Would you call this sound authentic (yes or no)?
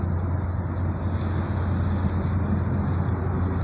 yes